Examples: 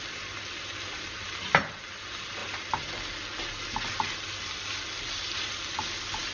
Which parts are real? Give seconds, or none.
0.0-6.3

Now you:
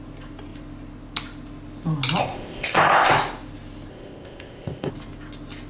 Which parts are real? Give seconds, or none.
0.0-2.2; 3.1-3.9; 4.9-5.7

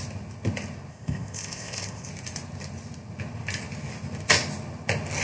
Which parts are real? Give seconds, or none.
0.0-0.9; 2.1-5.2